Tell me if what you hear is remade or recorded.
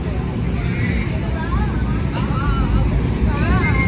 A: recorded